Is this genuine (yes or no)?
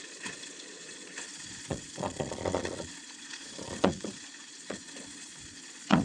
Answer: no